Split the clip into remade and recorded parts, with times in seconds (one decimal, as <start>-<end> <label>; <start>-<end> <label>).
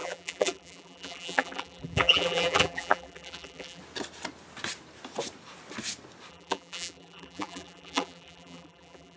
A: 0.0-3.8 remade; 3.8-6.3 recorded; 6.3-9.2 remade